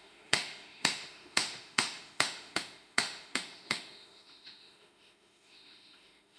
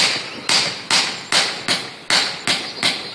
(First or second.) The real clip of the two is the second